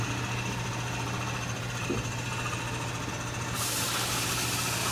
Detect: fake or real real